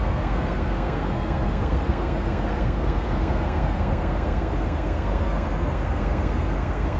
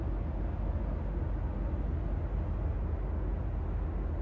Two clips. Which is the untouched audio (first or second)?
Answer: second